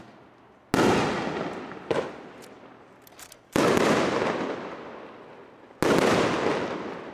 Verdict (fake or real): real